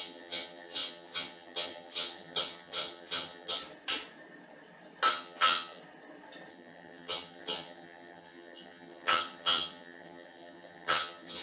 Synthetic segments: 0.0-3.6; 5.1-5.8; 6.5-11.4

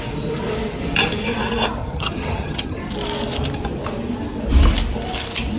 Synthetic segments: 1.8-2.8